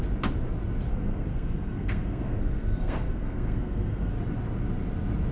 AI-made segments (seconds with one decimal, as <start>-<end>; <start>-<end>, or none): 0.9-4.1